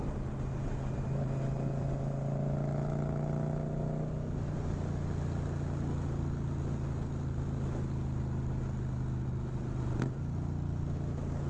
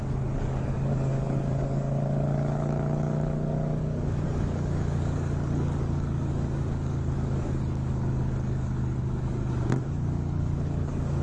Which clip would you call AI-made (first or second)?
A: second